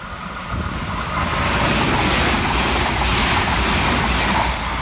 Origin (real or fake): real